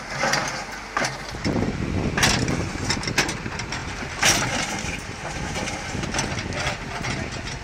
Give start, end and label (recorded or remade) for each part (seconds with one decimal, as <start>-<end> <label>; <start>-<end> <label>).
0.0-3.8 recorded; 3.8-4.7 remade; 4.7-7.6 recorded